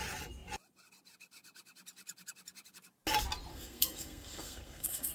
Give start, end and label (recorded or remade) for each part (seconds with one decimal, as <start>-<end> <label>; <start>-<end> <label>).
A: 0.0-3.5 recorded; 3.5-5.1 remade